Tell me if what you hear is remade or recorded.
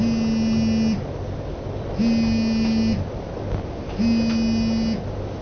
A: recorded